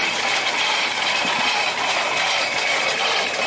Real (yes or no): yes